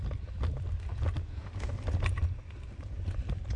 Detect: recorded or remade recorded